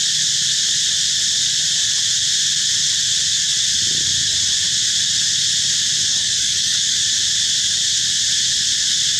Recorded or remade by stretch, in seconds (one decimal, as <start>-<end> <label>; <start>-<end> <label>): 0.0-6.1 recorded; 6.1-7.0 remade; 7.0-9.2 recorded